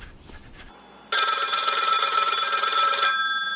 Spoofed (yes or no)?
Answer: no